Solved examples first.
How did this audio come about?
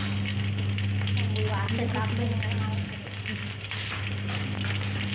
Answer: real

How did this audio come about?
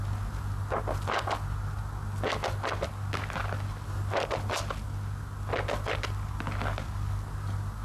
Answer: real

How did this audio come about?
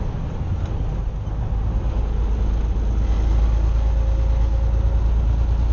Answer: real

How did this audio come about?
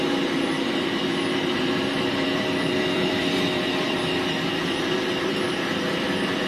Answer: fake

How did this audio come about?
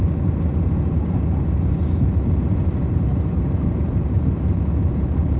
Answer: fake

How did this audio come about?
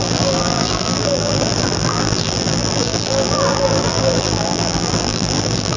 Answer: fake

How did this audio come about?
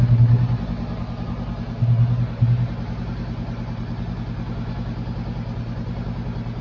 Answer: real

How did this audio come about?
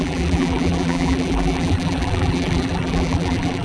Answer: fake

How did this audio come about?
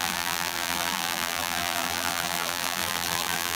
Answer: fake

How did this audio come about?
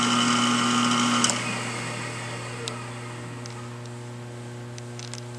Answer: real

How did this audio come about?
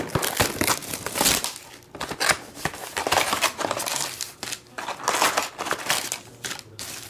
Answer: real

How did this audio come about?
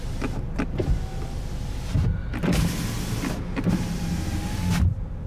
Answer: real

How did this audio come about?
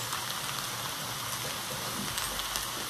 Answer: real